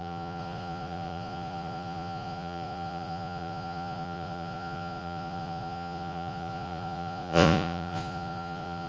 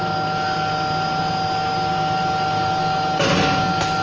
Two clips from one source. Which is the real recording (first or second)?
second